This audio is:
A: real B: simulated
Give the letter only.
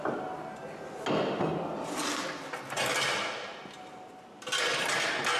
A